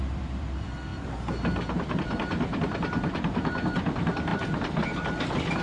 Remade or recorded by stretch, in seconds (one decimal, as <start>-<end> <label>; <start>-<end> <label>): 0.0-0.9 remade; 0.9-1.8 recorded; 1.8-5.6 remade